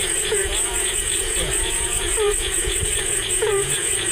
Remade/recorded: remade